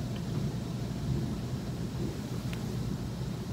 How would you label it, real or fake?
real